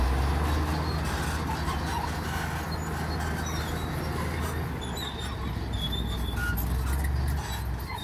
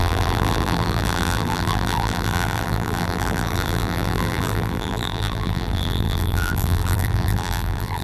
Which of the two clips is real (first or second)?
first